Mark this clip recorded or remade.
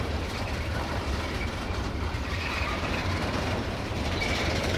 remade